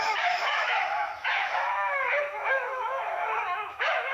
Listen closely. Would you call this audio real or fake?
fake